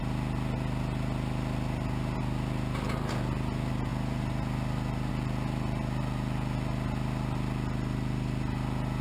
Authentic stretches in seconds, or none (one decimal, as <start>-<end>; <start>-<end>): 0.0-9.0